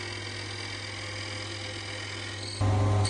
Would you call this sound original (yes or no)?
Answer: yes